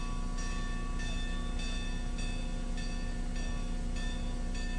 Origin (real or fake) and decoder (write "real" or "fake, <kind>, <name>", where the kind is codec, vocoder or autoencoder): real